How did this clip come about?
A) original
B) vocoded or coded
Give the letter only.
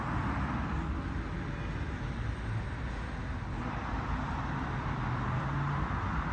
A